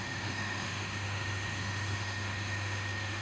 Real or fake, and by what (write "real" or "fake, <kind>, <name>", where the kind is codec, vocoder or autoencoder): fake, autoencoder, DAC-VAE